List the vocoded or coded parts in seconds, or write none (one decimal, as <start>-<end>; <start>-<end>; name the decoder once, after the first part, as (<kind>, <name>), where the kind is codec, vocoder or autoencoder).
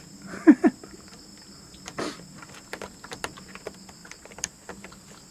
4.0-4.5 (vocoder, BigVGAN v2)